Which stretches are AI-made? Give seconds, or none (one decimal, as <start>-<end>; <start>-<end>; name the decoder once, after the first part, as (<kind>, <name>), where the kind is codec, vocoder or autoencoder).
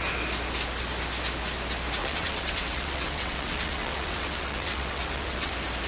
2.0-5.5 (vocoder, WaveNeXt)